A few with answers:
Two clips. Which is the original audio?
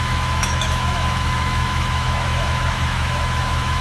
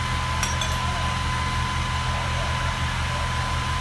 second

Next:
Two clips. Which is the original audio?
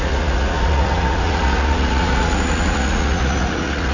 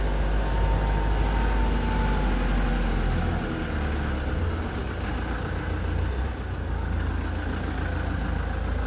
second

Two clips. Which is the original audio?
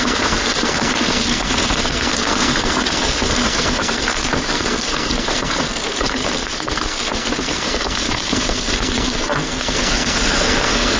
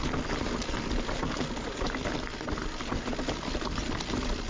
second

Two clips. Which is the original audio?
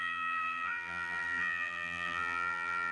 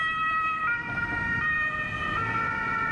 second